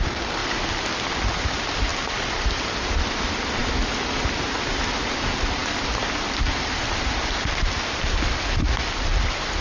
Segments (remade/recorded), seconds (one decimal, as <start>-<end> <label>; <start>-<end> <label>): 0.0-9.6 recorded